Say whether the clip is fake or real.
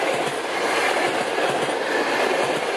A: real